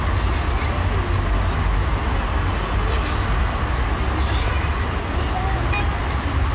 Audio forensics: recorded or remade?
recorded